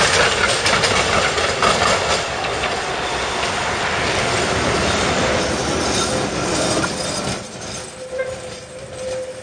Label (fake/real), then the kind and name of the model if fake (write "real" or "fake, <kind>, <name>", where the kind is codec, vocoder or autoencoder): real